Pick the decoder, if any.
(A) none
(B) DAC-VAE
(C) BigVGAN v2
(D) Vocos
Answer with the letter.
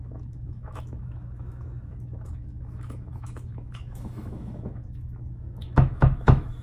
B